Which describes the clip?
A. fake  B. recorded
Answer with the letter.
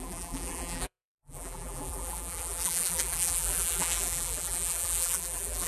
A